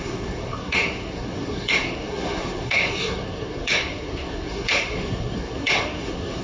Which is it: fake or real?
fake